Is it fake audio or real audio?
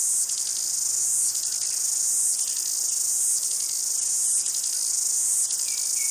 real